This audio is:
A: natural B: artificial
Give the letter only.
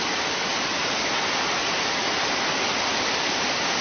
A